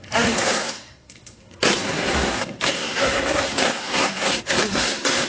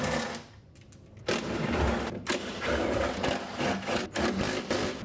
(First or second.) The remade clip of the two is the first